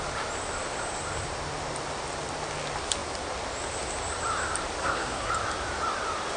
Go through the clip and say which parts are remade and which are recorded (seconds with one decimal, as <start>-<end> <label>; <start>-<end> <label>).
0.0-4.8 recorded; 4.8-5.3 remade; 5.3-6.4 recorded